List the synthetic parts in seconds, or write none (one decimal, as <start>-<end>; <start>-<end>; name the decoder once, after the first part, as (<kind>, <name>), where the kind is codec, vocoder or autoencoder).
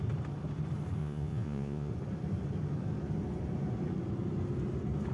1.0-1.9 (vocoder, Vocos)